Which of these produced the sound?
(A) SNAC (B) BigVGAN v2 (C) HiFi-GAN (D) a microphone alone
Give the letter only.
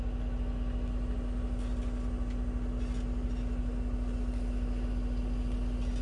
D